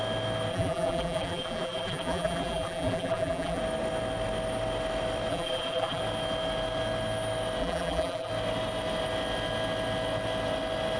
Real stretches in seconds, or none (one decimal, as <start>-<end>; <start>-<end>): 0.0-0.5; 3.6-5.3; 6.0-7.6; 8.3-11.0